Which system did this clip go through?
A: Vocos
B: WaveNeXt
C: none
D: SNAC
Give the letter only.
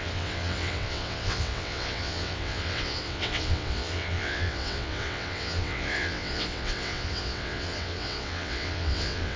B